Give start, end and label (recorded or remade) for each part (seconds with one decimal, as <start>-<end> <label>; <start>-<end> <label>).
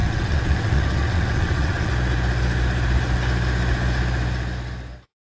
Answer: 0.0-1.9 remade; 1.9-5.2 recorded